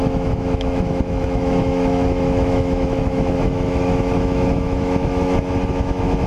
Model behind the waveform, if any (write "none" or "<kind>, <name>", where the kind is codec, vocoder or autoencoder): autoencoder, DAC-VAE